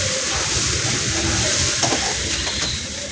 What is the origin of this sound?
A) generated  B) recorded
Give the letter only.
B